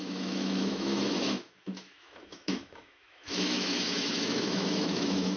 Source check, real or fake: fake